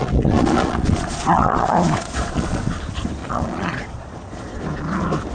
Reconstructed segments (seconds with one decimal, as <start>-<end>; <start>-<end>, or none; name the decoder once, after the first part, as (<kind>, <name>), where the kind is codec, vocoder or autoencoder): 0.0-2.6 (vocoder, Vocos); 3.2-4.6